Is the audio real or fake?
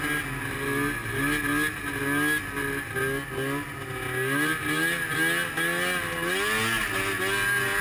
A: real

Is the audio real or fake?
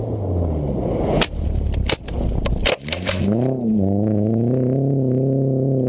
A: real